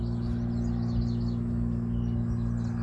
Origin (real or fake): real